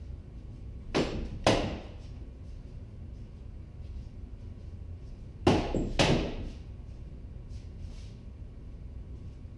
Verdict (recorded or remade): recorded